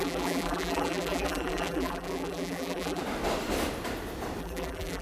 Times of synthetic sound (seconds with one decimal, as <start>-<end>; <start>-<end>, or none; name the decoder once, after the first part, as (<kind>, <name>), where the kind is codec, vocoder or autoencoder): 0.0-3.0 (vocoder, BigVGAN v2); 4.4-5.0